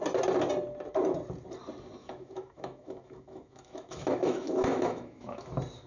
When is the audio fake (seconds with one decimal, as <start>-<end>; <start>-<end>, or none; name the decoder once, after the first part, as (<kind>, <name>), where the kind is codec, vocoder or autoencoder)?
2.0-5.5 (autoencoder, DAC-VAE)